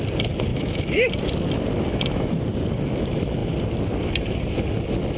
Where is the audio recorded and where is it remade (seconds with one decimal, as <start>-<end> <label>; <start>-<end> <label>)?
0.0-0.5 recorded; 0.5-1.1 remade; 1.1-1.9 recorded; 1.9-2.4 remade; 2.4-5.2 recorded